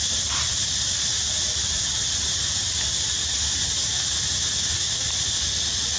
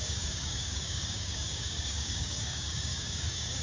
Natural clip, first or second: first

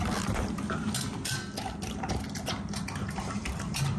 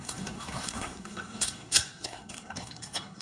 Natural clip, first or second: first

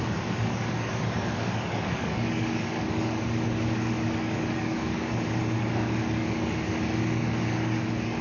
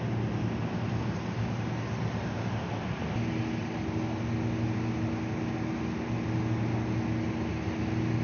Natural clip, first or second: second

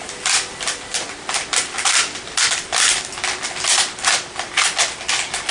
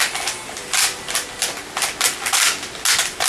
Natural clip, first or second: second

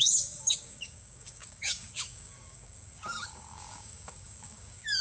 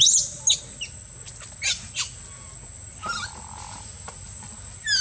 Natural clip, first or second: second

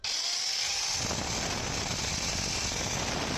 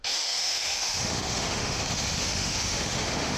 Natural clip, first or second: first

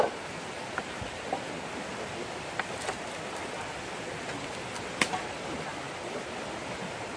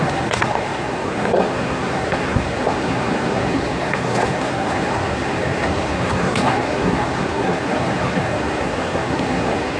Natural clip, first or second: first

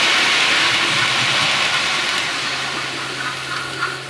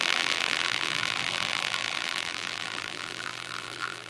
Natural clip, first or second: first